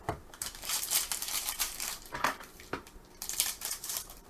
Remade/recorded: remade